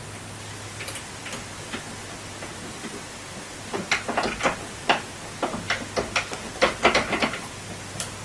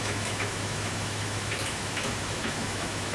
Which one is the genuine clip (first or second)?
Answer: first